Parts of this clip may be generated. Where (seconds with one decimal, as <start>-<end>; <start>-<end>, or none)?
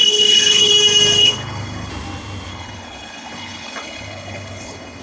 0.0-0.7; 1.2-1.9; 2.5-5.0